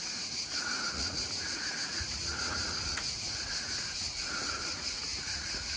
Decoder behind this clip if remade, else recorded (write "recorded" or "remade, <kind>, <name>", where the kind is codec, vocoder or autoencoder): remade, vocoder, Vocos